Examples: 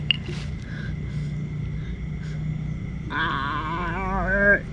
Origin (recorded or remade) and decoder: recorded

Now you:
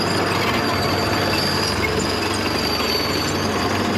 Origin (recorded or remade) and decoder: recorded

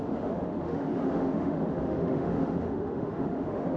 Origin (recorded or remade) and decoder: remade, autoencoder, DAC-VAE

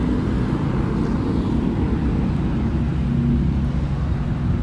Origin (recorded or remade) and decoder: recorded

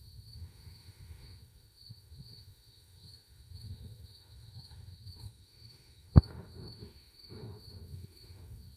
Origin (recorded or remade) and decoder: remade, autoencoder, DAC-VAE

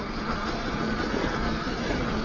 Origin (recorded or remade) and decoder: recorded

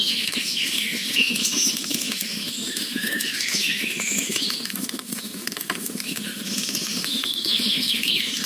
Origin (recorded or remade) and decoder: remade, autoencoder, DAC-VAE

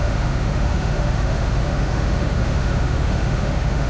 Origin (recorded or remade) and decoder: remade, autoencoder, DAC-VAE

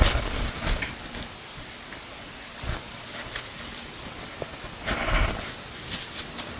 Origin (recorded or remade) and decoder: recorded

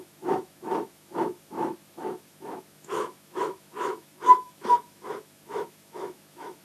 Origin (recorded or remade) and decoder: remade, autoencoder, DAC-VAE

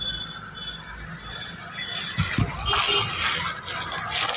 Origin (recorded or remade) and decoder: recorded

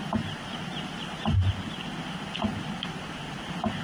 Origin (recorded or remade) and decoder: recorded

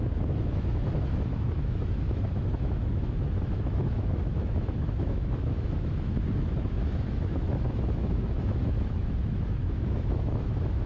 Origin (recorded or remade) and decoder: remade, autoencoder, DAC-VAE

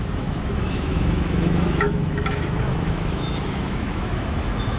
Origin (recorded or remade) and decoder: remade, autoencoder, DAC-VAE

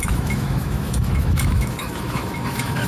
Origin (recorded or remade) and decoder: remade, autoencoder, DAC-VAE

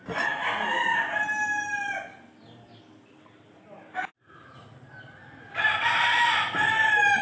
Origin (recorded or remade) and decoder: recorded